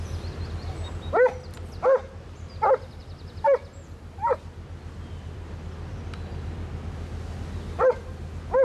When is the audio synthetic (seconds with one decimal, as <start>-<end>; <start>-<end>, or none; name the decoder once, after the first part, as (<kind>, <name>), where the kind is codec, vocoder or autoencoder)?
none